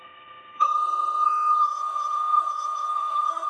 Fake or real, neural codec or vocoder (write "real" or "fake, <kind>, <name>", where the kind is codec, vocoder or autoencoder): fake, codec, SNAC